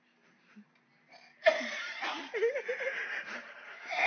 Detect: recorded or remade remade